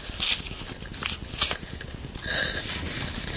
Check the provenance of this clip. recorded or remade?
recorded